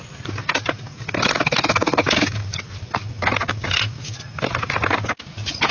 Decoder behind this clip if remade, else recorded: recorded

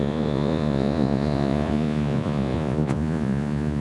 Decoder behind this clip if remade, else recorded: remade, vocoder, Vocos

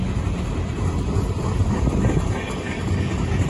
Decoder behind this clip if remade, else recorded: recorded